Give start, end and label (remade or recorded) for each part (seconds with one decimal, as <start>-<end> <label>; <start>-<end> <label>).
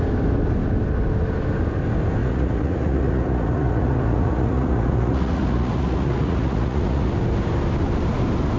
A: 0.0-2.2 recorded; 2.2-7.1 remade; 7.1-8.6 recorded